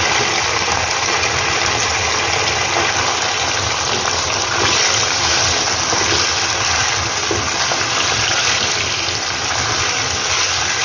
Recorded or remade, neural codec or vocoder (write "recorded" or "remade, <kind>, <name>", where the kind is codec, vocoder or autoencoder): recorded